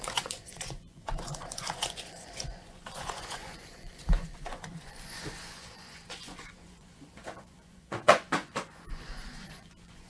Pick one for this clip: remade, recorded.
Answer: remade